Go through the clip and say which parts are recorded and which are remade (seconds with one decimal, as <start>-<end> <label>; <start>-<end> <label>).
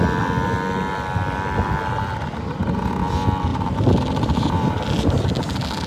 0.0-3.5 recorded; 3.5-5.9 remade